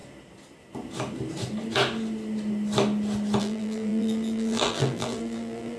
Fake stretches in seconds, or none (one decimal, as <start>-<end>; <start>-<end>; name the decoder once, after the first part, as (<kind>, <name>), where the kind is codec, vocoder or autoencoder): 3.4-5.8 (vocoder, BigVGAN v2)